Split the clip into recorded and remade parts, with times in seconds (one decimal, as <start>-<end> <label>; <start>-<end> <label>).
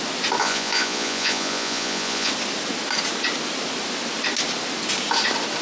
0.0-0.4 recorded; 0.4-2.3 remade; 2.3-5.6 recorded